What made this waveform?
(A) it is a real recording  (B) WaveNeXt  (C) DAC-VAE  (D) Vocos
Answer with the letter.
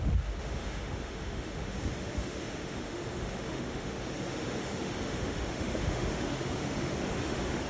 C